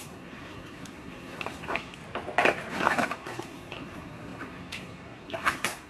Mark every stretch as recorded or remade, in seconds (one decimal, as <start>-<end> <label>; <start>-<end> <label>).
0.0-2.0 remade; 2.0-2.7 recorded; 2.7-5.9 remade